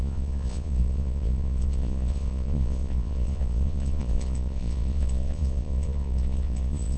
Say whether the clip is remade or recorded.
remade